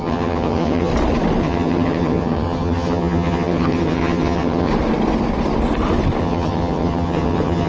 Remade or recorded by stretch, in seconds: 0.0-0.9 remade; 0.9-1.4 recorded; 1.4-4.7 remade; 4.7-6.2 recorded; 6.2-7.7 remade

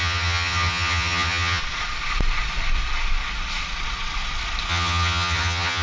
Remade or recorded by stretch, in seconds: 0.0-1.6 remade; 1.6-4.7 recorded; 4.7-5.8 remade

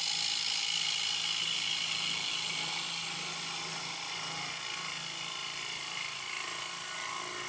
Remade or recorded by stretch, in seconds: 0.0-5.4 recorded; 5.4-6.2 remade; 6.2-7.5 recorded